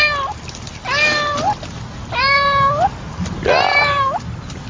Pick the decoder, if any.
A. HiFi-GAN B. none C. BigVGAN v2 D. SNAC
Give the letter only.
B